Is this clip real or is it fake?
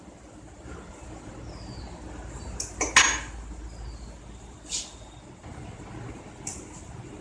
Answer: real